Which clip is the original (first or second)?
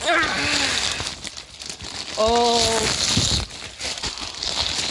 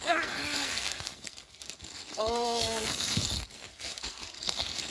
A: first